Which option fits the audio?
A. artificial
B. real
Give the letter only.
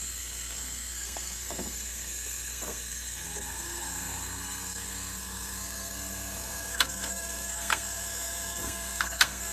A